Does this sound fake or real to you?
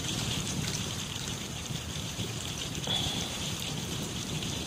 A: fake